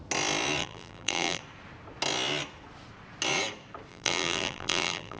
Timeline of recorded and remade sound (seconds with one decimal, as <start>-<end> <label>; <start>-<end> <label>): 0.0-0.6 recorded; 0.6-1.4 remade; 1.4-3.9 recorded; 3.9-5.2 remade